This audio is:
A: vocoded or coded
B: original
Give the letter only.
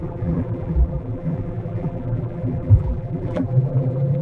A